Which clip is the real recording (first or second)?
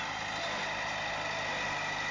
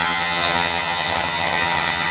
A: first